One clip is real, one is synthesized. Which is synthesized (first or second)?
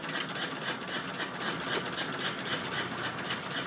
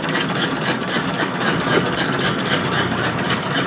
second